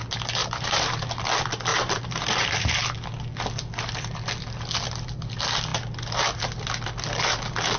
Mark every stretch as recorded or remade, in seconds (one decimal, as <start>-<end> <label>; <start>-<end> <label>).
0.0-0.4 recorded; 0.4-1.2 remade; 1.2-1.7 recorded; 1.7-2.7 remade; 2.7-7.8 recorded